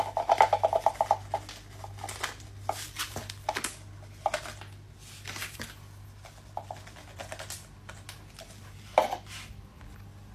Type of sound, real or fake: real